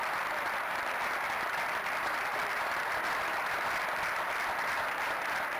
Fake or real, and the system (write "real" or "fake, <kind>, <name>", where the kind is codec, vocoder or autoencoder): fake, vocoder, BigVGAN v2